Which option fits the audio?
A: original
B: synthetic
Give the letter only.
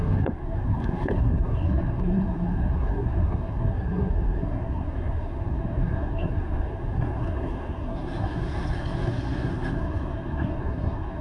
B